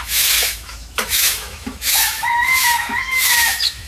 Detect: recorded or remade remade